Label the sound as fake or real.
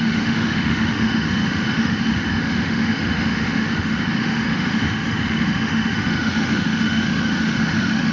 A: fake